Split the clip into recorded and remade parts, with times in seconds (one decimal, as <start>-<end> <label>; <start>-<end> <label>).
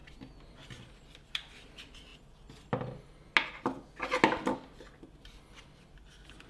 0.0-6.5 recorded